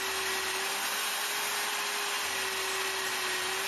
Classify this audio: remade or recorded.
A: recorded